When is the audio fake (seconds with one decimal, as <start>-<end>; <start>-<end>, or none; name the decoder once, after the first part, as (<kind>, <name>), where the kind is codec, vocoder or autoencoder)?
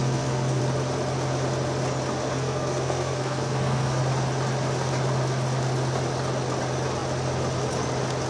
0.0-0.6 (codec, SNAC); 2.2-4.0